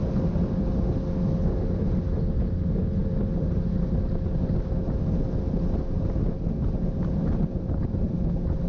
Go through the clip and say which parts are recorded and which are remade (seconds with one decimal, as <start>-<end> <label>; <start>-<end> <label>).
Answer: 0.0-8.7 recorded